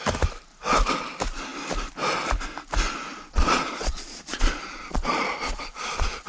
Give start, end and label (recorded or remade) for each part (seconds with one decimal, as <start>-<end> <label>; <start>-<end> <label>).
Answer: 0.0-3.1 recorded; 3.1-6.3 remade